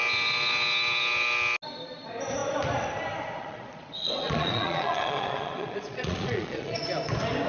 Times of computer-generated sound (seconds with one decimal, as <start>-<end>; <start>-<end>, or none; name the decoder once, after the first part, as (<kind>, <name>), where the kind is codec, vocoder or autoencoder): 3.4-6.8 (vocoder, Vocos)